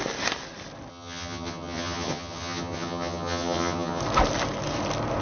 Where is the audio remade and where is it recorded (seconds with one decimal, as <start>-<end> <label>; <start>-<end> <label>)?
0.0-0.9 recorded; 0.9-4.0 remade; 4.0-5.2 recorded